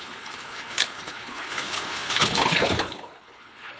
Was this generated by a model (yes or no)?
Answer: yes